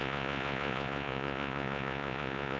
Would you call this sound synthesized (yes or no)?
yes